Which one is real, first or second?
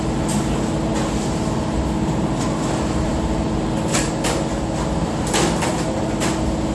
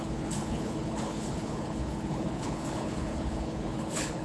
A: first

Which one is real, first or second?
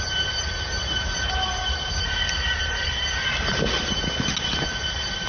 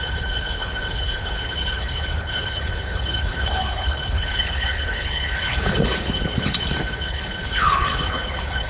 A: first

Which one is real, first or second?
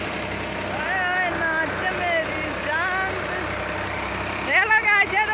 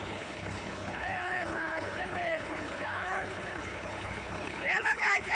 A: first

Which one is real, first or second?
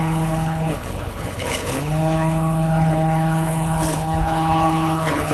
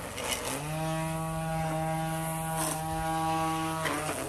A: second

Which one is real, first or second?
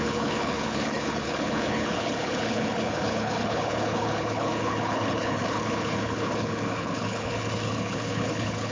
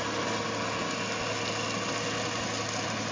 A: second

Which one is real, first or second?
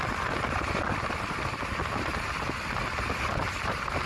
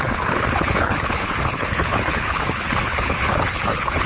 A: first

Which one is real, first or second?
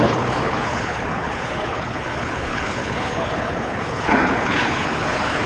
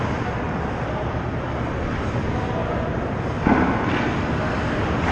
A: second